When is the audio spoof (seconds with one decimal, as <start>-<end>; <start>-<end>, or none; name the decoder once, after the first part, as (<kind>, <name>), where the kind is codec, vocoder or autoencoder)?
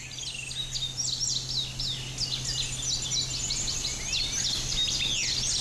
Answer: none